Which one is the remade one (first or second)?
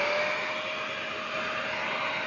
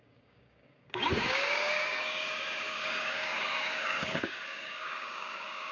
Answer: second